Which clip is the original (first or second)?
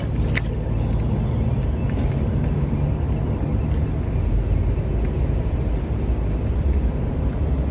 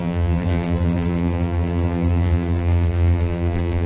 first